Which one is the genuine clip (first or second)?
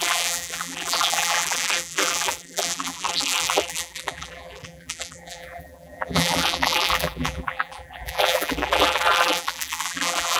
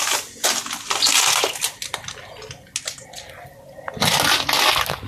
second